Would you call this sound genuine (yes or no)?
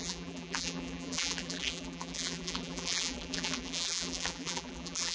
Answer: no